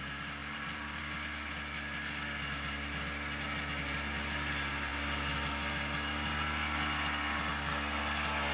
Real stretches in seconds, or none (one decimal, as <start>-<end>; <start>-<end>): 0.0-0.4; 1.0-8.5